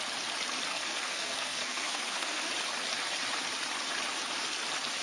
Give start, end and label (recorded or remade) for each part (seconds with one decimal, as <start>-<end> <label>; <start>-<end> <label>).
0.0-0.7 recorded; 0.7-2.5 remade; 2.5-5.0 recorded